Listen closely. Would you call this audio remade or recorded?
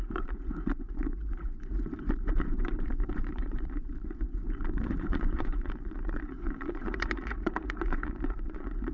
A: remade